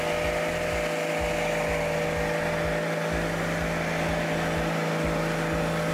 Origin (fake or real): real